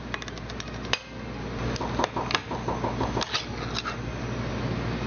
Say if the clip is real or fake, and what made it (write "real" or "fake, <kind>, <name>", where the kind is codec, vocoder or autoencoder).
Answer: real